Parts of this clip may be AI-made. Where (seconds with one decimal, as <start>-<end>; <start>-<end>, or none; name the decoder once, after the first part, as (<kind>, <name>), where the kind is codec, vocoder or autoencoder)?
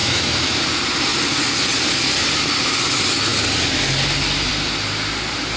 0.0-0.6 (autoencoder, DAC-VAE)